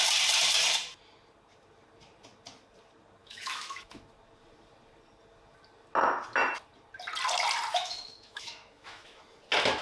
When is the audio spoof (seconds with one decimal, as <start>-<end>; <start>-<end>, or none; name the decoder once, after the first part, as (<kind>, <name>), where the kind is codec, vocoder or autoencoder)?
3.2-4.0 (autoencoder, DAC-VAE); 7.7-9.2